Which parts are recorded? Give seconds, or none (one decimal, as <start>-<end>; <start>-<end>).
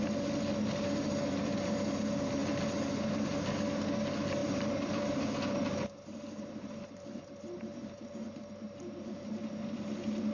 0.0-4.4; 9.4-10.3